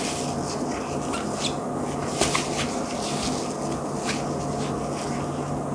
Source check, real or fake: real